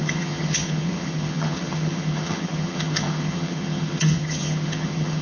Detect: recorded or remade remade